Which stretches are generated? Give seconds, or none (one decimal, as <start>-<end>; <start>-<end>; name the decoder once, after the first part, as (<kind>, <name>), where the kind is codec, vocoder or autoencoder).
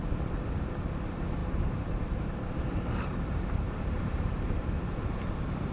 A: 1.4-4.8 (vocoder, BigVGAN v2)